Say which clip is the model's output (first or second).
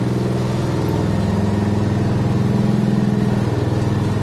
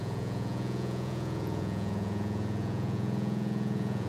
second